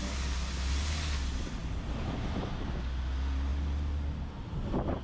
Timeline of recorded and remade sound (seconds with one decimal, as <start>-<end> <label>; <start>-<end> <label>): 0.0-5.0 recorded